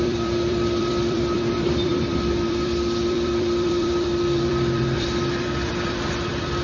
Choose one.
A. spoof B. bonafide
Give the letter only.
A